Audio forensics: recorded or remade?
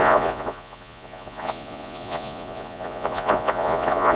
remade